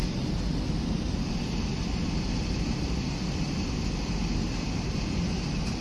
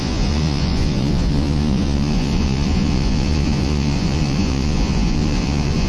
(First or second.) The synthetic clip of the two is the second